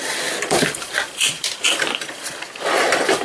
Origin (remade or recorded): remade